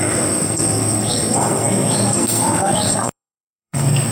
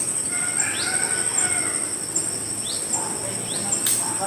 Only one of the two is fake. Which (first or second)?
first